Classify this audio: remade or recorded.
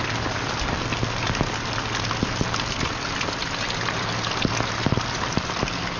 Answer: recorded